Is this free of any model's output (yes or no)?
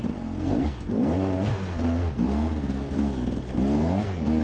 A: no